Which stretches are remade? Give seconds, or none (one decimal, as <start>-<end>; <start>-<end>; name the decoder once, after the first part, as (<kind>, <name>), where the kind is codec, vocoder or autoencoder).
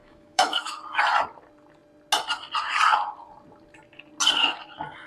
0.0-0.8 (autoencoder, DAC-VAE)